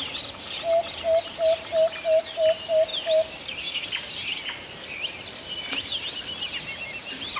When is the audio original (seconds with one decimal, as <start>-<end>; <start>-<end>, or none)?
0.0-7.4